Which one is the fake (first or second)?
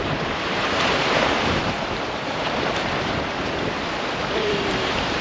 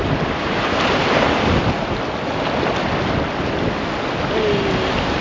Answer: first